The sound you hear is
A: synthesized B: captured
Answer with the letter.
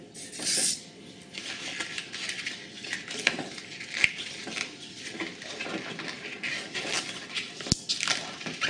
B